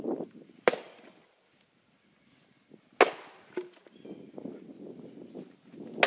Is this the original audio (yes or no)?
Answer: yes